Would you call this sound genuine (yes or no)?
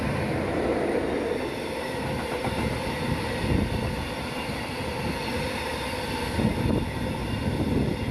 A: yes